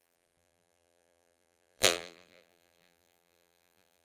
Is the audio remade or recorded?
remade